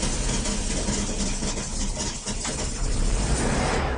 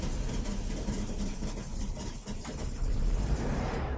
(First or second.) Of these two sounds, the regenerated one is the second